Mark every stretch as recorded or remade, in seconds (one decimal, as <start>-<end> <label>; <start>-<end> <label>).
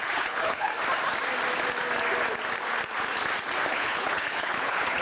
0.0-0.7 remade; 0.7-3.7 recorded; 3.7-5.0 remade